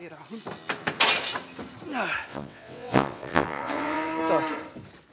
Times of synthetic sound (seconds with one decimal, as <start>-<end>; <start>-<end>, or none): 2.3-4.2